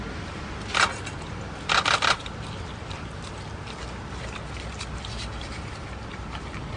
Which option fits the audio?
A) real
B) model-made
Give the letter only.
A